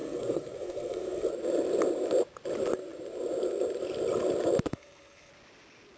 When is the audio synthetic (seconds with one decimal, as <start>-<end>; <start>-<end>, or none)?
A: 0.0-1.3; 4.7-5.3